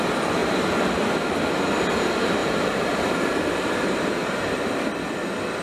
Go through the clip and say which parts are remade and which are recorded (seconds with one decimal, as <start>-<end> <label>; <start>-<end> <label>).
0.0-0.4 recorded; 0.4-0.9 remade; 0.9-2.4 recorded; 2.4-4.7 remade; 4.7-5.6 recorded